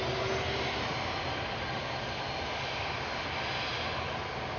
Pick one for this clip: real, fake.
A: real